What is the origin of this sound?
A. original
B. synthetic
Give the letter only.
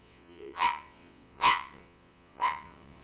B